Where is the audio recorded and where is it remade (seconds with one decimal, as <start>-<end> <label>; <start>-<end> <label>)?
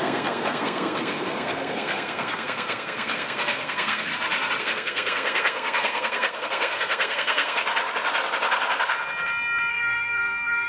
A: 0.0-4.1 remade; 4.1-4.6 recorded; 4.6-7.6 remade; 7.6-9.7 recorded; 9.7-10.7 remade